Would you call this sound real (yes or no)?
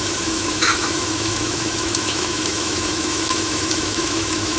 no